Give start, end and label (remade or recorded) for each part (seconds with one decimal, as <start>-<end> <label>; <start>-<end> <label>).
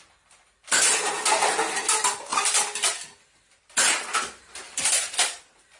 0.0-5.8 recorded